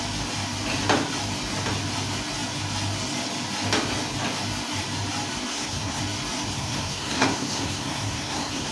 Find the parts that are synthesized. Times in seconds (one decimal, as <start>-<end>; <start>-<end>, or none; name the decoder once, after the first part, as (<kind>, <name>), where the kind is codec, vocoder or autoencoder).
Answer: 5.5-6.0 (codec, SNAC); 6.5-8.7